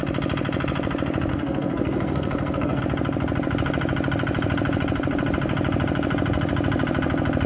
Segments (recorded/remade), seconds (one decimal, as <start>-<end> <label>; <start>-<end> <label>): 0.0-1.3 recorded; 1.3-2.8 remade; 2.8-7.5 recorded